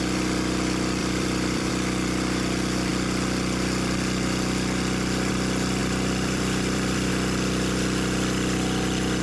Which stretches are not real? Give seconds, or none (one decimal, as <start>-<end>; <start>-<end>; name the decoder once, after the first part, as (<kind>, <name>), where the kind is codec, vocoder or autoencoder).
1.0-1.7 (vocoder, BigVGAN v2); 5.8-7.1